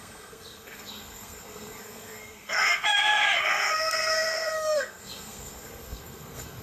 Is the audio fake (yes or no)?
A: yes